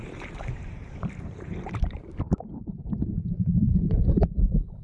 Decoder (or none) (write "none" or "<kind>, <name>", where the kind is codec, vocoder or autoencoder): vocoder, BigVGAN v2